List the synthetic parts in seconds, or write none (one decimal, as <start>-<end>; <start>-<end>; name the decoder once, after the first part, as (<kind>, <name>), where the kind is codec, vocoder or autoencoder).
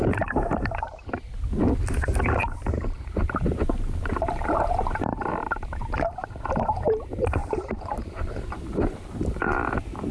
2.4-3.4 (vocoder, BigVGAN v2); 7.4-9.7